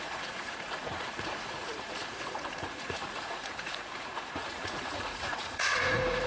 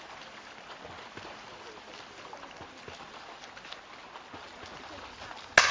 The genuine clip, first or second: second